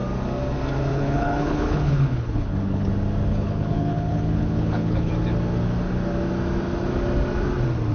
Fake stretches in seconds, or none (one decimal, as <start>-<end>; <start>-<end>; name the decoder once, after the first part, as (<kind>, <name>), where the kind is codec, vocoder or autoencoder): 0.9-2.9 (codec, HILCodec); 3.3-5.1